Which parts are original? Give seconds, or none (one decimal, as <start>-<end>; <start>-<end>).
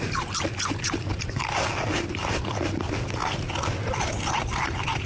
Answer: 0.0-5.1